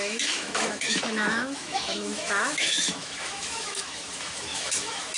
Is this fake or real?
fake